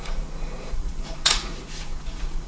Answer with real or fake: fake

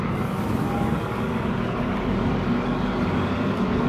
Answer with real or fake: fake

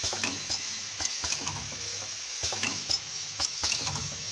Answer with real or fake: fake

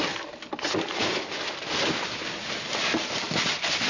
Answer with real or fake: real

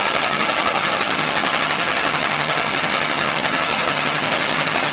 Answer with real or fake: fake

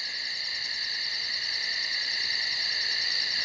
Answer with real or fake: real